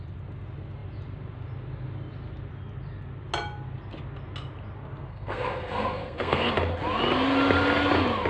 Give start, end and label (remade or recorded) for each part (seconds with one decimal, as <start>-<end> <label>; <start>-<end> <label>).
0.0-5.1 recorded; 5.1-6.5 remade; 6.5-8.3 recorded